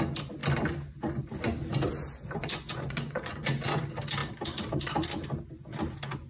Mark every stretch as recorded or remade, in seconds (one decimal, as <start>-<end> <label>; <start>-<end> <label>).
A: 0.0-2.4 recorded; 2.4-3.8 remade; 3.8-6.3 recorded

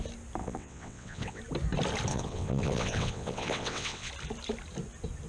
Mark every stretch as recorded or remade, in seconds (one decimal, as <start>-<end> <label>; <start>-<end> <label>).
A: 0.0-0.4 recorded; 0.4-1.4 remade; 1.4-2.1 recorded; 2.1-4.1 remade; 4.1-5.3 recorded